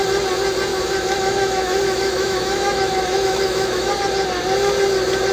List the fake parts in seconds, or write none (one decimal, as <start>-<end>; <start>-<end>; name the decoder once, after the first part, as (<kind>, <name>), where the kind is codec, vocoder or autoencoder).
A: 0.7-3.9 (autoencoder, DAC-VAE)